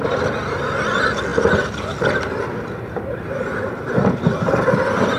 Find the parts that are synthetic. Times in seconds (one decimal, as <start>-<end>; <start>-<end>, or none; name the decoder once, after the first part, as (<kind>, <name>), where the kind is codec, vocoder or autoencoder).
none

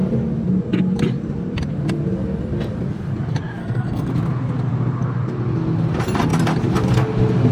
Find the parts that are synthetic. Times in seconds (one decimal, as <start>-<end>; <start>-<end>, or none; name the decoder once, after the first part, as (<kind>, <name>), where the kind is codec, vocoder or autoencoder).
3.6-4.1 (codec, SNAC)